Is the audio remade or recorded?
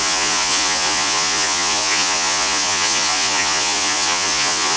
remade